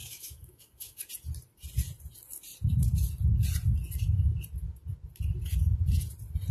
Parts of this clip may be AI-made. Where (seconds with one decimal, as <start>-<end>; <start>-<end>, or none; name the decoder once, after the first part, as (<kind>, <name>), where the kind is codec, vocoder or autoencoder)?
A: 0.0-1.1 (autoencoder, DAC-VAE)